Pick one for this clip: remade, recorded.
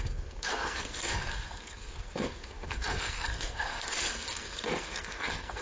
remade